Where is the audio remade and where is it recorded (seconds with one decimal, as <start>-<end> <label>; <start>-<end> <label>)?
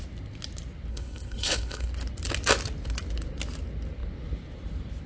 0.0-0.9 recorded; 0.9-1.9 remade; 1.9-5.1 recorded